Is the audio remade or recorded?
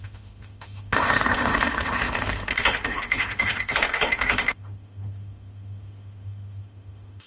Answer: remade